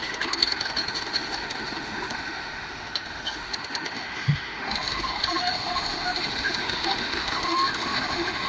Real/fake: fake